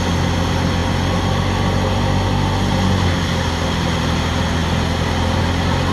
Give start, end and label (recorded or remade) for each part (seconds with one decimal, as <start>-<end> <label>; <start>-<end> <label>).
0.0-5.9 recorded